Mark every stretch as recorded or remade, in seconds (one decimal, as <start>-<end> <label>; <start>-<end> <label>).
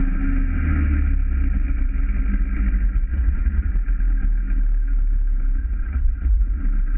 0.0-3.1 recorded; 3.1-3.7 remade; 3.7-5.6 recorded; 5.6-6.6 remade; 6.6-7.0 recorded